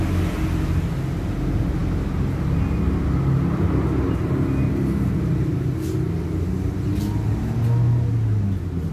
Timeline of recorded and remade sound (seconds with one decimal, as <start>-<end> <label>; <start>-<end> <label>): 0.0-8.9 recorded